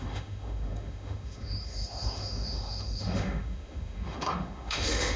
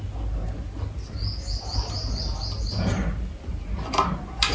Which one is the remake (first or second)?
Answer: first